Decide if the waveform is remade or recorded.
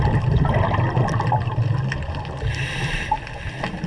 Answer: recorded